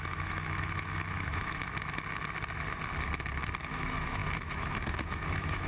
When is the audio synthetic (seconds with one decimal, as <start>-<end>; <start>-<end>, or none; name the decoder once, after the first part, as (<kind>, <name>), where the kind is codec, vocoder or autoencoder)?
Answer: 0.0-1.6 (autoencoder, DAC-VAE); 3.6-5.7